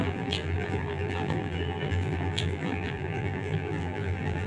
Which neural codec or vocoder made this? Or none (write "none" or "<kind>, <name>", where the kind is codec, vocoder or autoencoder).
vocoder, BigVGAN v2